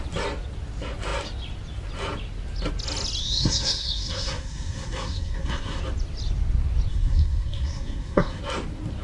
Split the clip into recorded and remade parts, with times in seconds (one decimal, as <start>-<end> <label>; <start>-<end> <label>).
0.0-3.2 recorded; 3.2-5.8 remade; 5.8-6.9 recorded; 6.9-8.4 remade; 8.4-9.0 recorded